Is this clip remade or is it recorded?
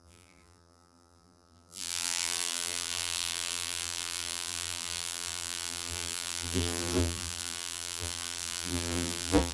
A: remade